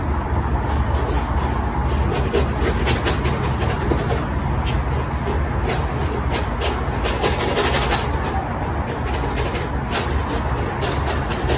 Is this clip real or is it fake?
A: real